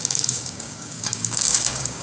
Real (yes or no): no